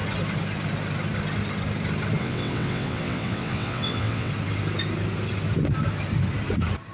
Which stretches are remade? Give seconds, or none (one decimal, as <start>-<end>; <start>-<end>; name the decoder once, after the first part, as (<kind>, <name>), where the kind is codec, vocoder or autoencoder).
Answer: 2.2-4.3 (vocoder, WaveNeXt)